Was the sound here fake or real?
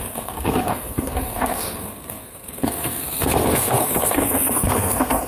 fake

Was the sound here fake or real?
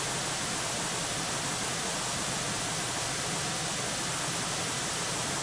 real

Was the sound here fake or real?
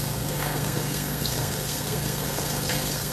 fake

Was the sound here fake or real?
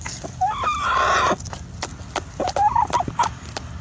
real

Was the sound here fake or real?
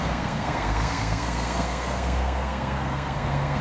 fake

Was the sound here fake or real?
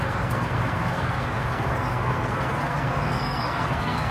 fake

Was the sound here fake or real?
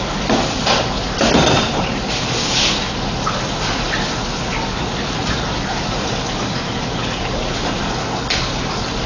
real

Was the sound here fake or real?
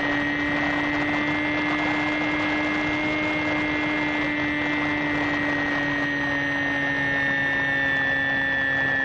real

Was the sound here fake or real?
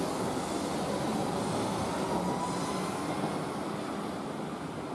real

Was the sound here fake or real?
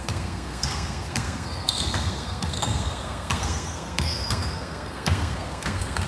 fake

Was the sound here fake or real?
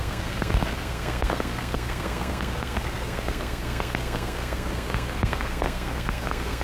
fake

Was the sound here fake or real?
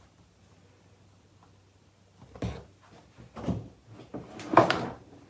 real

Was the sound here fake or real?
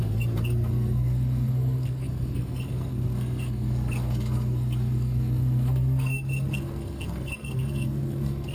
fake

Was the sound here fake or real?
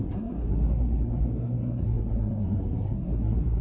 fake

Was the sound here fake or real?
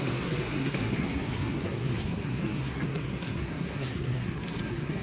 fake